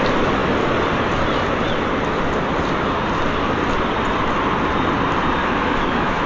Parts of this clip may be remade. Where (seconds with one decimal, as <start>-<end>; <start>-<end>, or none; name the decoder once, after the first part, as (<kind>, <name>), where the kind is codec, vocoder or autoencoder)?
5.4-6.3 (autoencoder, DAC-VAE)